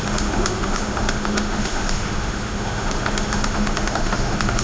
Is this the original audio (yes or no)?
no